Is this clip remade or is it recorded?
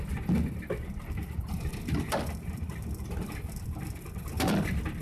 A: remade